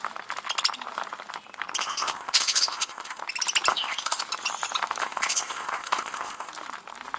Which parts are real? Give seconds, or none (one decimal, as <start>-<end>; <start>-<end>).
0.0-1.8; 3.2-3.7; 4.2-5.0; 6.5-7.2